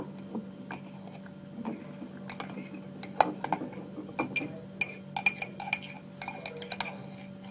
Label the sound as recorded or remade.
recorded